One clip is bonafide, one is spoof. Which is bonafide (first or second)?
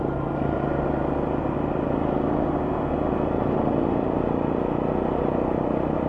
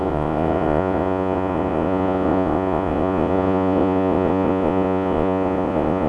first